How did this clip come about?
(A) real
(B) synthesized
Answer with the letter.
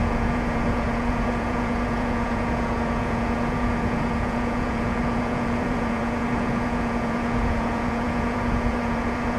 B